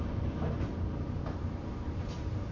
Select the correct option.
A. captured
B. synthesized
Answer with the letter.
B